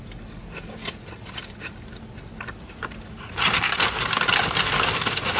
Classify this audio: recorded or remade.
recorded